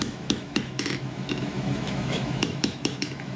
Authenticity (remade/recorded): remade